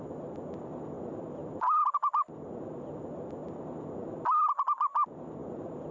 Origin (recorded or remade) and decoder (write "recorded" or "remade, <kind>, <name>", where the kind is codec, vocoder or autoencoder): recorded